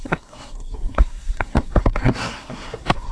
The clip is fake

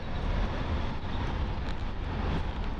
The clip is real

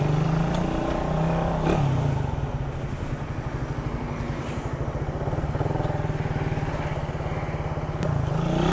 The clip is real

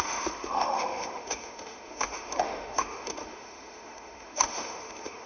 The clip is fake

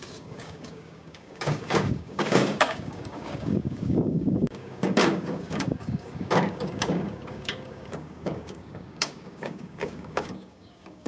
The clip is fake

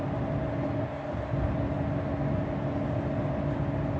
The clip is real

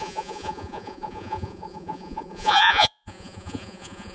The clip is fake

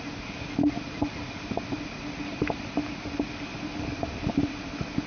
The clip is real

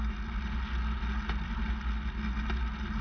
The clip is real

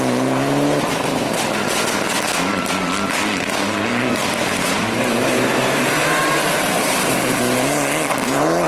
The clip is real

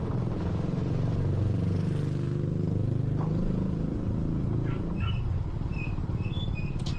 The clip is real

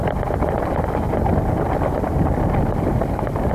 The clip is real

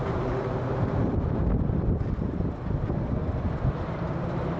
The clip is real